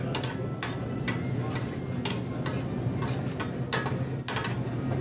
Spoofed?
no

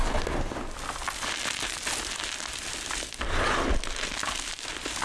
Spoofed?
no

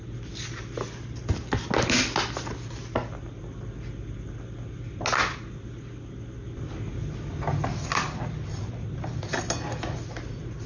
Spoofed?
no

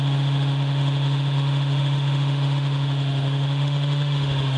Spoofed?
yes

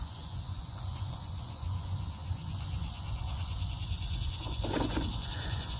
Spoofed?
yes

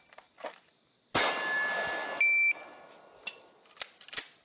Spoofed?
no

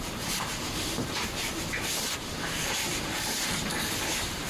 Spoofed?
yes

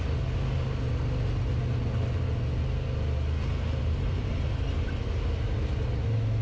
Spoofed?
no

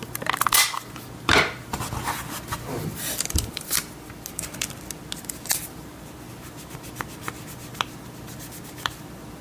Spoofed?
no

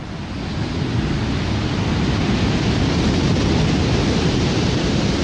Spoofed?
no